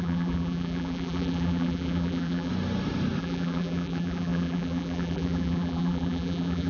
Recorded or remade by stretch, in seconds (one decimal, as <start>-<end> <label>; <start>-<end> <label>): 0.0-2.5 remade; 2.5-3.2 recorded; 3.2-6.7 remade